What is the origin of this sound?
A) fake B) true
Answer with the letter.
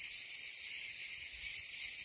B